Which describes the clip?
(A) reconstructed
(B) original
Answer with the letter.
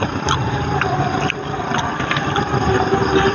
B